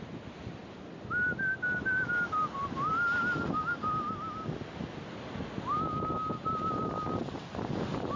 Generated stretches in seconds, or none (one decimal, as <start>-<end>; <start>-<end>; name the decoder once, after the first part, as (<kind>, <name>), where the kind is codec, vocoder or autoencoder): none